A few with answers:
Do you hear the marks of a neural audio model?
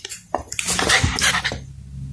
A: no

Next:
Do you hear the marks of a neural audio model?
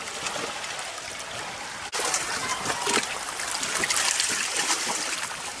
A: no